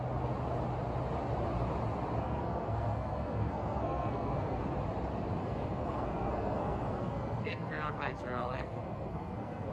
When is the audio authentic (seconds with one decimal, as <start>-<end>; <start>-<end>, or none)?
0.0-2.2; 4.6-5.4